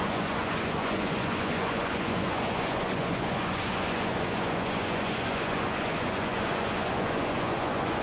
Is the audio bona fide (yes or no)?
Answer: no